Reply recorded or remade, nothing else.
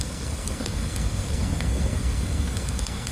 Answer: remade